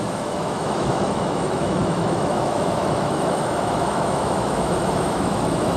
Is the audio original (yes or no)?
no